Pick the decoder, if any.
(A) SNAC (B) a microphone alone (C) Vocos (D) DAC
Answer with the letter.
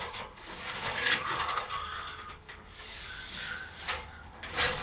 D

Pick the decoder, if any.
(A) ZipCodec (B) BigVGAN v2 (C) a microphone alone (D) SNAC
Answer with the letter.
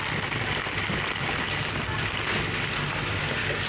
B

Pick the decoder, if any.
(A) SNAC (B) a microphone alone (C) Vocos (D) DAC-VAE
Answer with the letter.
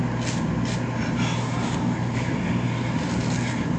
B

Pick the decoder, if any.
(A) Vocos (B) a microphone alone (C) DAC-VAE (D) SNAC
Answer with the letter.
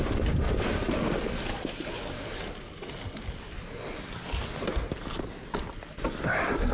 B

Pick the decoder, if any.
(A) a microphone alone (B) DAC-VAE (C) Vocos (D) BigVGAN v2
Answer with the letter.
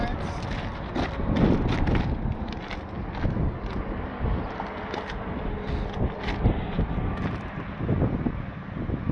A